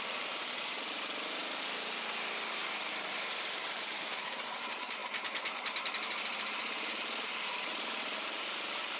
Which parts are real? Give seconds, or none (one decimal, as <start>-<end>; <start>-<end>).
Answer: 1.4-2.9; 5.0-8.4